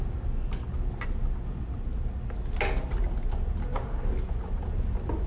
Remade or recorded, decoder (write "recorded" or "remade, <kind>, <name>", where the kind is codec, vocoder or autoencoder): recorded